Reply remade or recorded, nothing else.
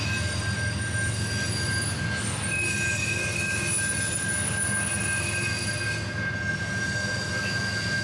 recorded